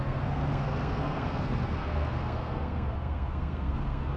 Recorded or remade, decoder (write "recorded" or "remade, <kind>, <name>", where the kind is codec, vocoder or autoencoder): remade, codec, SNAC